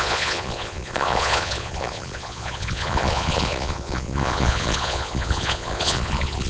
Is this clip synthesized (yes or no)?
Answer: yes